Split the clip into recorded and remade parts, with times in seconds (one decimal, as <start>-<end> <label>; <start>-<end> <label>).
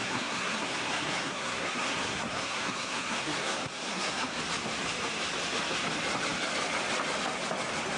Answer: 0.0-4.4 remade; 4.4-8.0 recorded